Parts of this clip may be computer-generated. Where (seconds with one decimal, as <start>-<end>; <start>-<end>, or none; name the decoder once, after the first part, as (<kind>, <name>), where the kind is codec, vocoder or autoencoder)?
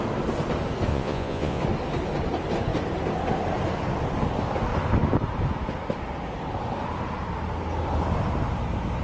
0.9-1.6 (vocoder, Vocos)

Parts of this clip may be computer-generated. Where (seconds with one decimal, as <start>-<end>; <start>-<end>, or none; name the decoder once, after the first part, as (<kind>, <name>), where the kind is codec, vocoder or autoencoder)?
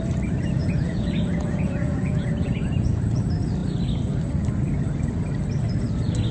0.6-3.2 (vocoder, Vocos)